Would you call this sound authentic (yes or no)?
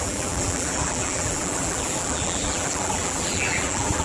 no